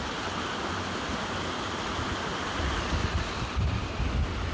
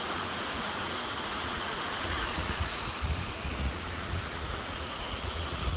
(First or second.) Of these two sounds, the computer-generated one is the second